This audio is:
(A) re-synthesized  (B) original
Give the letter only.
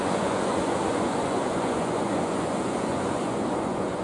A